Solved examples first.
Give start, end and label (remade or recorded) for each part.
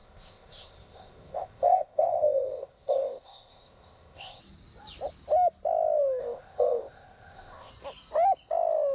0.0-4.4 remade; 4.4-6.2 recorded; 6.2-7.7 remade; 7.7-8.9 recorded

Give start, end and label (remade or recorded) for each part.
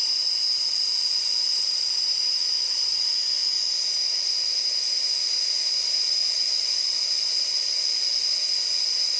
0.0-0.7 recorded; 0.7-1.7 remade; 1.7-6.2 recorded; 6.2-8.0 remade; 8.0-9.2 recorded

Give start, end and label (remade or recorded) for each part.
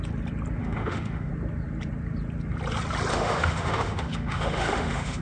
0.0-0.6 recorded; 0.6-1.3 remade; 1.3-3.1 recorded; 3.1-5.2 remade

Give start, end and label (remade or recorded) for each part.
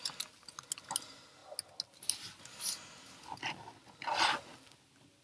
0.0-5.2 recorded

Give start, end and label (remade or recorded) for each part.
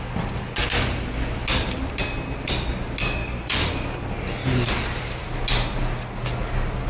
0.0-3.0 recorded; 3.0-3.6 remade; 3.6-6.9 recorded